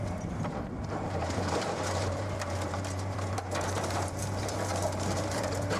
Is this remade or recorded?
remade